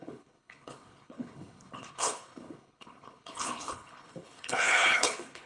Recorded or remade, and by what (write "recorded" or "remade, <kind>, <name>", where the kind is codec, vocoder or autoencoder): remade, codec, HILCodec